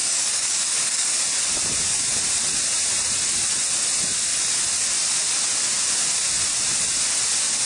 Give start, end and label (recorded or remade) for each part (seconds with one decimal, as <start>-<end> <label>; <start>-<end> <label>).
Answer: 0.0-1.2 remade; 1.2-7.7 recorded